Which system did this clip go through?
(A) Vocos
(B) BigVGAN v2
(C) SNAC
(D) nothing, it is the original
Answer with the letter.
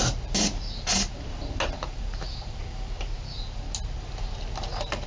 D